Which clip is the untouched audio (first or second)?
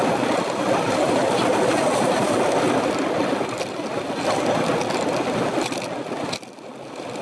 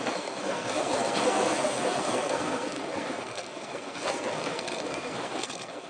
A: first